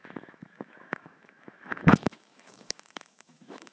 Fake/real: fake